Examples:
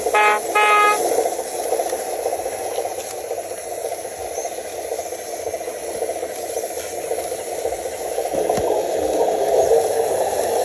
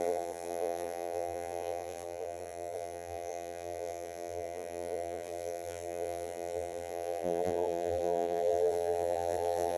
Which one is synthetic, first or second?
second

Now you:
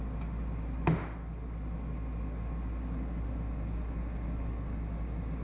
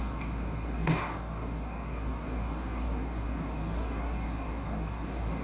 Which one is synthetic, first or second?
second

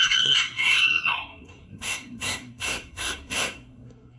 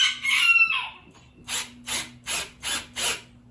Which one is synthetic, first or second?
first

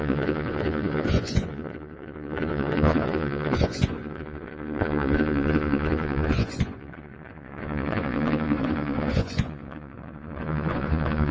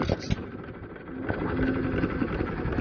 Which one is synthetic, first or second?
first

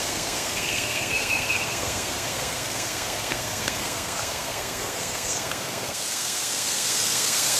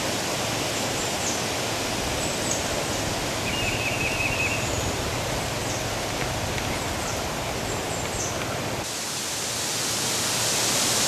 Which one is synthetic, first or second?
first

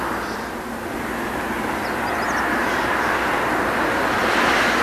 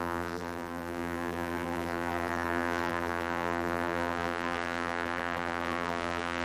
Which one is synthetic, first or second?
second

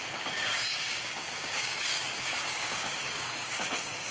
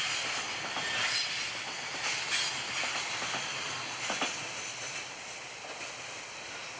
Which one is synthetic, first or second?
first